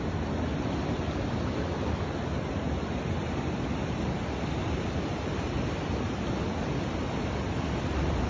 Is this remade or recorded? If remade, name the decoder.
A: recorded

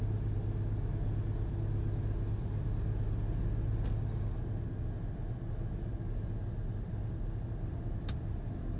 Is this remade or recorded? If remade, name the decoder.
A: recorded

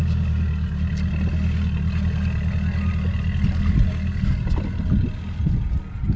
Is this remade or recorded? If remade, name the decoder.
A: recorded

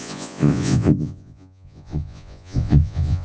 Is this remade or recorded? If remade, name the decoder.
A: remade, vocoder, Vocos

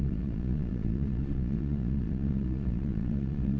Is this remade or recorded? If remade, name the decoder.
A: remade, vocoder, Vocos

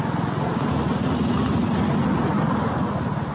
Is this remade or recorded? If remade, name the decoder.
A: recorded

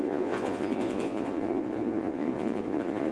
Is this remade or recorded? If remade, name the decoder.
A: remade, vocoder, Vocos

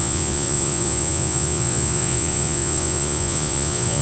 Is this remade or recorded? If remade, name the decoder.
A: remade, vocoder, Vocos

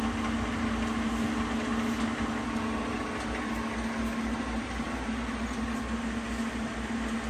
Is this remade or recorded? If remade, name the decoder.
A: recorded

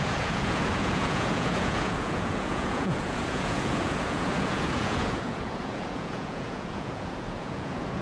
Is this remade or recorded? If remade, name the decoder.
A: remade, vocoder, Vocos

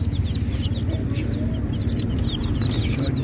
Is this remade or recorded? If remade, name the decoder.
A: recorded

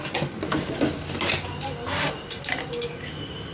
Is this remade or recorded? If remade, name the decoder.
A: recorded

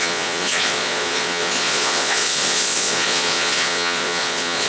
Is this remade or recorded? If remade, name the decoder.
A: remade, vocoder, Vocos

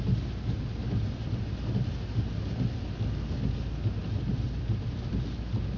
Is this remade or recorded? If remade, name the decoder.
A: recorded